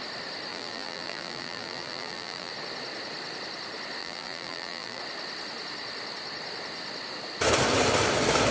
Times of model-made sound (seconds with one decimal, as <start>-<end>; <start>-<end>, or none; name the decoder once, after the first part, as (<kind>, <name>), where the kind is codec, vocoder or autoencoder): 0.5-2.5 (vocoder, BigVGAN v2); 4.0-5.0